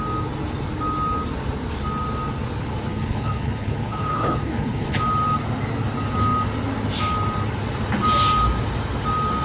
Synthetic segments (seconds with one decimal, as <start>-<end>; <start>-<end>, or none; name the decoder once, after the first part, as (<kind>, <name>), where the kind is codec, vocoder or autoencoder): 2.9-5.0 (codec, HILCodec)